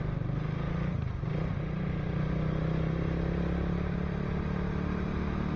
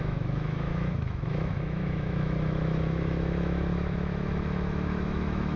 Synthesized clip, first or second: second